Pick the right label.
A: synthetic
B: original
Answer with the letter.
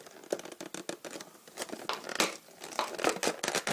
B